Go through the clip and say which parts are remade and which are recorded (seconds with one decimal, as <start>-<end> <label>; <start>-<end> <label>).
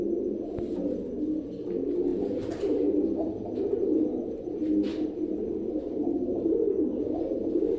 0.0-4.9 recorded; 4.9-7.0 remade; 7.0-7.8 recorded